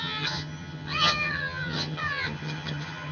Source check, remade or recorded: remade